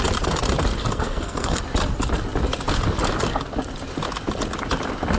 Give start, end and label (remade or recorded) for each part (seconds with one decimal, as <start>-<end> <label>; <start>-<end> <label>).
0.0-0.8 recorded; 0.8-1.6 remade; 1.6-5.2 recorded